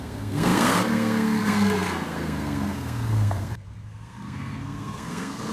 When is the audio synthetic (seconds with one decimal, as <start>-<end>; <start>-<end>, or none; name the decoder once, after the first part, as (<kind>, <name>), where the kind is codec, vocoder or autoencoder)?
0.0-5.5 (codec, SNAC)